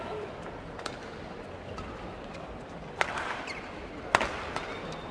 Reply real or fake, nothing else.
real